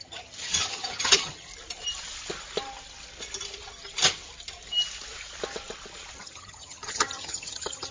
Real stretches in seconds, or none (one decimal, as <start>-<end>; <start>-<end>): 1.5-6.2